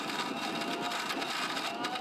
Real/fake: real